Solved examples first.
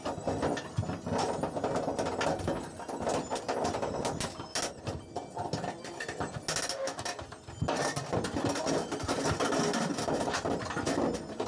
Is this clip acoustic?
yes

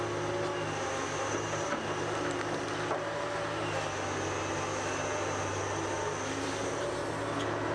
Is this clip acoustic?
yes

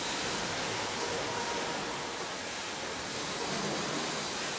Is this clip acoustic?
yes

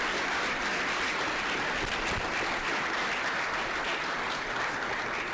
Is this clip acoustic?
yes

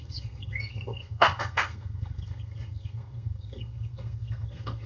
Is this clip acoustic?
no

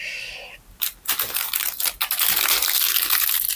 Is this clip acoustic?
yes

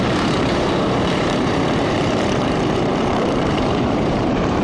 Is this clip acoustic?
no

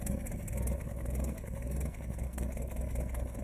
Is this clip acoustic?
no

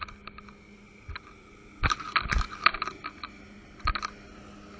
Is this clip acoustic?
yes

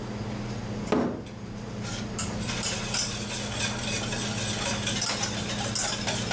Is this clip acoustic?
yes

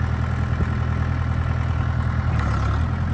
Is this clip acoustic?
yes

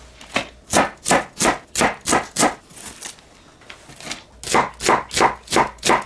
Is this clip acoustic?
yes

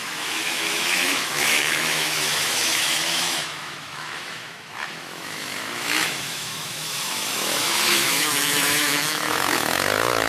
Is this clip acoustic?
no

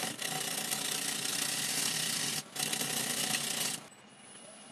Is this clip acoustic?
yes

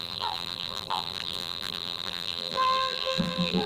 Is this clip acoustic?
no